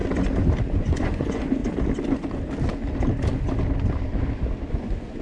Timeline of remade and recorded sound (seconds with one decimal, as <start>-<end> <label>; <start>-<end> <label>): 0.0-0.7 recorded; 0.7-1.6 remade; 1.6-4.7 recorded; 4.7-5.2 remade